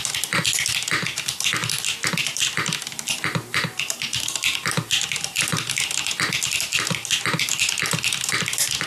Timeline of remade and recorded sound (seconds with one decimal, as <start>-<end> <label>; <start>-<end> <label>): 0.0-8.9 recorded